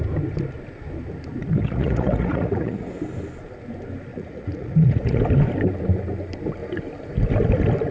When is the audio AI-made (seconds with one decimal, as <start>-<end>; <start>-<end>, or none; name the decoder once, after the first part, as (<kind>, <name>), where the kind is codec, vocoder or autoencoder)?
1.6-2.9 (vocoder, Vocos); 4.1-5.2